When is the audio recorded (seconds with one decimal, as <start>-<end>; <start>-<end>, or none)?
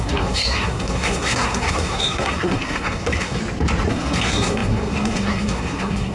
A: 3.4-3.9